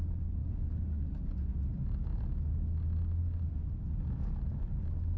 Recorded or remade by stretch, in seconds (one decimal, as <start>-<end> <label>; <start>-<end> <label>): 0.0-5.2 recorded